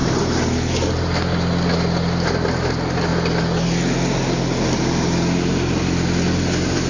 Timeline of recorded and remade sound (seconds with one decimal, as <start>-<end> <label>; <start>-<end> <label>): 0.0-6.9 recorded